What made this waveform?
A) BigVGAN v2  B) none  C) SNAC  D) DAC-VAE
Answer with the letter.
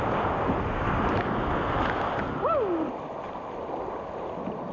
B